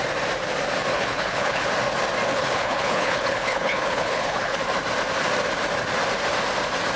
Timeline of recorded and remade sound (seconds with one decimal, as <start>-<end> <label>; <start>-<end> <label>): 0.0-0.9 recorded; 0.9-1.7 remade; 1.7-2.3 recorded; 2.3-4.6 remade; 4.6-7.0 recorded